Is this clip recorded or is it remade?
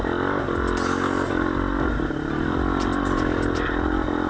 recorded